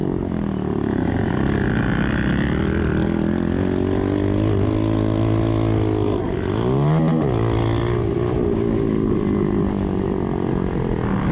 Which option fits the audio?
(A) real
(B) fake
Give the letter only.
A